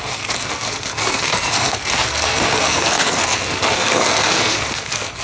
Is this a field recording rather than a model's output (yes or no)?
no